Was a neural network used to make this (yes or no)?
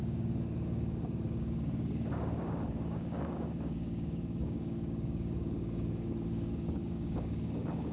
yes